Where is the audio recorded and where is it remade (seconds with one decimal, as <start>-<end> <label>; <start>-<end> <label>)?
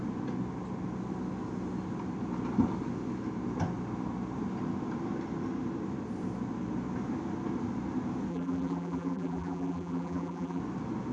0.0-8.3 recorded; 8.3-10.6 remade; 10.6-11.1 recorded